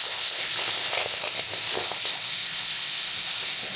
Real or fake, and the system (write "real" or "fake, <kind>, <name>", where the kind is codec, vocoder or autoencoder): fake, codec, ZipCodec